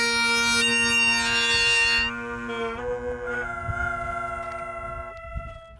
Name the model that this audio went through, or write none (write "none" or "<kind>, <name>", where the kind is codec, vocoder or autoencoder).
none